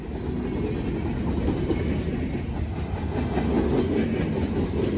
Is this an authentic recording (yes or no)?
yes